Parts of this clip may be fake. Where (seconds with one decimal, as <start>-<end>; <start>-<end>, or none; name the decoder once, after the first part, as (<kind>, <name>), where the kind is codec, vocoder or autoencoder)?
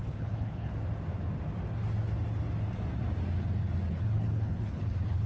0.0-0.7 (codec, HILCodec); 3.9-5.3